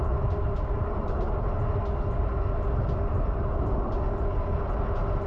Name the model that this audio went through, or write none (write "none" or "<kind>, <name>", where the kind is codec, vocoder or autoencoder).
none